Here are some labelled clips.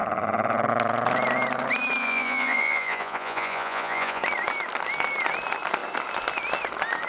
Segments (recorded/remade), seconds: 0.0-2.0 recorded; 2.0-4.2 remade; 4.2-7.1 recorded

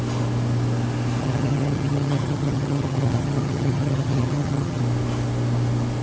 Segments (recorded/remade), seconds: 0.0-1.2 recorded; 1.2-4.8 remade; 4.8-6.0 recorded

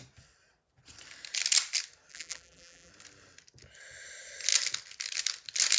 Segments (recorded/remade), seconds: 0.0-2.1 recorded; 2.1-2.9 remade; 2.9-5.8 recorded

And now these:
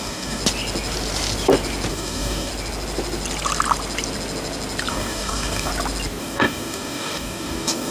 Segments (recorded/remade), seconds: 0.0-0.4 remade; 0.4-1.9 recorded; 1.9-2.5 remade; 2.5-4.9 recorded; 4.9-5.7 remade; 5.7-6.2 recorded; 6.2-7.9 remade

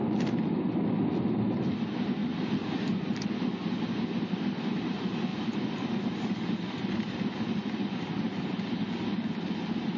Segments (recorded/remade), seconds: 0.0-2.2 recorded; 2.2-3.1 remade; 3.1-5.3 recorded; 5.3-8.4 remade; 8.4-10.0 recorded

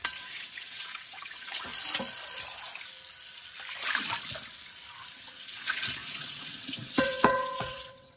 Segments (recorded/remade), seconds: 0.0-1.7 remade; 1.7-5.1 recorded; 5.1-8.2 remade

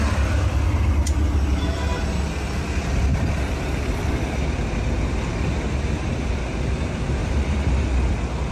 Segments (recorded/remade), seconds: 0.0-7.2 recorded; 7.2-8.1 remade; 8.1-8.5 recorded